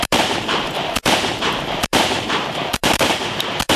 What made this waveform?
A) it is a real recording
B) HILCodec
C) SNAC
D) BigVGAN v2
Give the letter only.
D